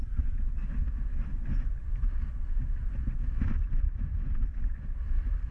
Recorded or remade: remade